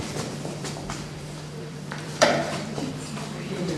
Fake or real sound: fake